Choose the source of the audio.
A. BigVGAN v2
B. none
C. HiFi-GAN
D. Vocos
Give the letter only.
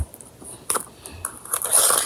B